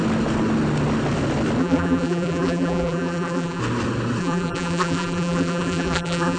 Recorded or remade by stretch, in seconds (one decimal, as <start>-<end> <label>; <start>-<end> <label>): 0.0-1.6 recorded; 1.6-3.6 remade; 3.6-4.2 recorded; 4.2-6.4 remade